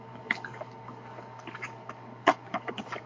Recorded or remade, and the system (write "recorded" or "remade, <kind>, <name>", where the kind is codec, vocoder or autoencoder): remade, codec, DAC